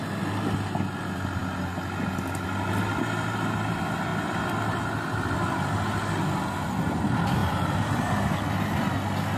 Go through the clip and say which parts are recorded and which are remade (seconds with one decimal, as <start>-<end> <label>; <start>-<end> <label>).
0.0-7.4 recorded; 7.4-8.4 remade; 8.4-9.4 recorded